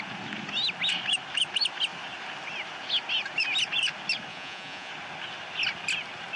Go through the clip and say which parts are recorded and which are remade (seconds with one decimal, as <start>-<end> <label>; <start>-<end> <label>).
0.0-4.3 recorded; 4.3-4.9 remade; 4.9-6.4 recorded